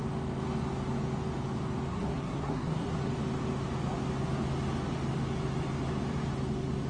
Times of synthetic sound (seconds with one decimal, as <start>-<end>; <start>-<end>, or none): 1.9-3.1